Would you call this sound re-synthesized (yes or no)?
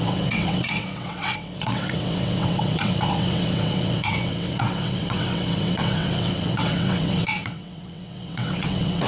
yes